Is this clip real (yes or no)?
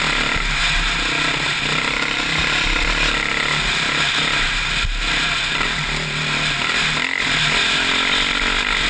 yes